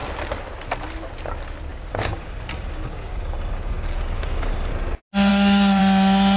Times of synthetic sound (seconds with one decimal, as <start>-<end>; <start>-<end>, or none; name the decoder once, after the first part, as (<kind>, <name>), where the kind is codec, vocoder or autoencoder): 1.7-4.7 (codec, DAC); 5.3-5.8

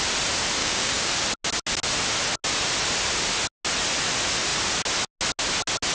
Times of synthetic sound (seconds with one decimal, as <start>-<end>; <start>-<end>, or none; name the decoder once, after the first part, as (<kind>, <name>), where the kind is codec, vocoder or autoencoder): 0.6-1.1 (codec, DAC)

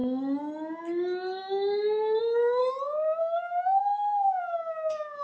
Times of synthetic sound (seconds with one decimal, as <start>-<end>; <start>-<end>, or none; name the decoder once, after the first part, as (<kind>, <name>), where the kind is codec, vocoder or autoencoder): 2.2-2.6 (codec, DAC); 3.2-5.2

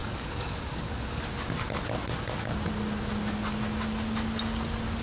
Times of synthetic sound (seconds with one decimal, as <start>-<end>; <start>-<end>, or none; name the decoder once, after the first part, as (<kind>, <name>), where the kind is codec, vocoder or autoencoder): 0.0-1.2 (codec, DAC)

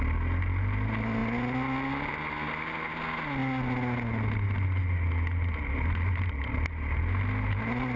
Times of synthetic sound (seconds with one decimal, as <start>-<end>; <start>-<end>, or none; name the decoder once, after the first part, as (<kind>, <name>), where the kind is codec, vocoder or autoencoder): none